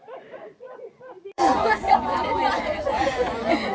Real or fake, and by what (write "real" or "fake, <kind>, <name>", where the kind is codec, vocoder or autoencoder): fake, vocoder, Vocos